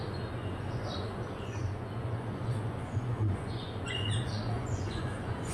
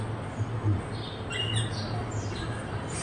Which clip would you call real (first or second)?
second